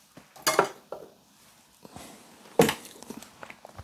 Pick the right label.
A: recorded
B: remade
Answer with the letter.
A